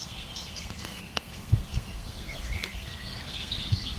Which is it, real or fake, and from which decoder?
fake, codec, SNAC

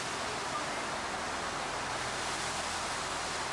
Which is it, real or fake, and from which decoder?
real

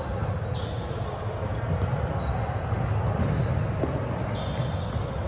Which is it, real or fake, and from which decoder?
real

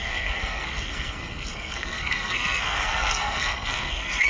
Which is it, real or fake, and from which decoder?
fake, codec, SNAC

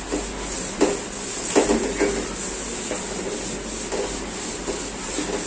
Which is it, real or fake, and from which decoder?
real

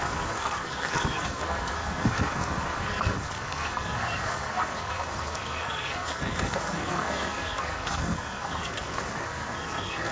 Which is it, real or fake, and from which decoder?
fake, codec, SNAC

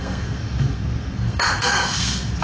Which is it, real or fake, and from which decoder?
fake, codec, SNAC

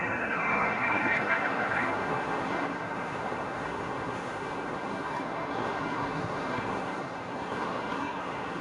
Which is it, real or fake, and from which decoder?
fake, codec, SNAC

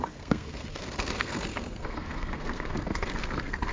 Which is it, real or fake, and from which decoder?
fake, codec, SNAC